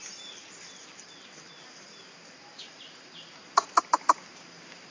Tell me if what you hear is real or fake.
real